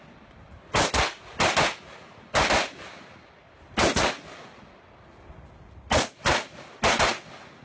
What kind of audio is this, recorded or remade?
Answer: recorded